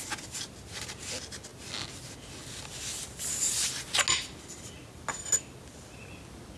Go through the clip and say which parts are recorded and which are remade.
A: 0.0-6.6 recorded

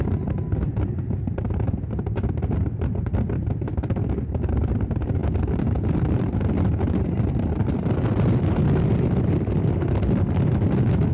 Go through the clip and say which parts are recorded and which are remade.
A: 0.0-11.1 recorded